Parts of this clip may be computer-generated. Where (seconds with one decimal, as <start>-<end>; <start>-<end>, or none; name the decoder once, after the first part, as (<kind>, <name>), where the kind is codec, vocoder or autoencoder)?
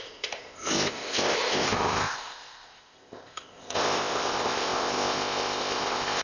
0.0-6.2 (codec, ZipCodec)